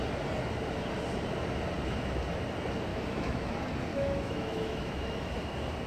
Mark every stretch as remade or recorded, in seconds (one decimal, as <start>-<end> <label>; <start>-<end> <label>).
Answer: 0.0-2.9 recorded; 2.9-3.5 remade; 3.5-3.9 recorded; 3.9-5.3 remade; 5.3-5.9 recorded